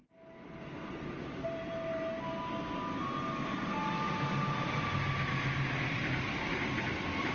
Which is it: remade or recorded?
recorded